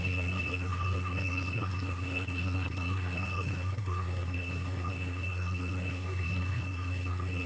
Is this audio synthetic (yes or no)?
yes